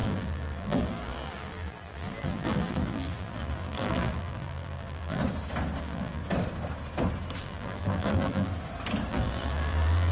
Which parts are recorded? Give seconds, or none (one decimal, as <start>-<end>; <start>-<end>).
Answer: 5.2-5.8; 6.2-7.4; 8.5-9.1